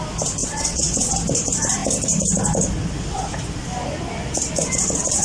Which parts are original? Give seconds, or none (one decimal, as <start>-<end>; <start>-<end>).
0.0-0.4; 1.1-5.2